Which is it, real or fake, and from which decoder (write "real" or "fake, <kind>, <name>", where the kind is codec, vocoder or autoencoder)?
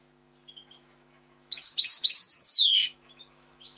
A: fake, autoencoder, DAC-VAE